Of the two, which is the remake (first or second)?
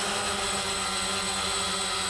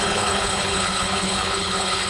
second